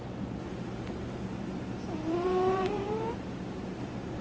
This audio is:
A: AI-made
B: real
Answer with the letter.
A